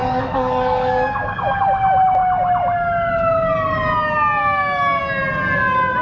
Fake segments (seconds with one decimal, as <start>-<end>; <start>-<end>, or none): 0.0-1.6; 4.4-5.0